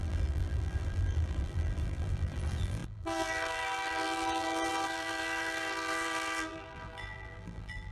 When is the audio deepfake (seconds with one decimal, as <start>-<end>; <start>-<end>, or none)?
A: 0.0-7.9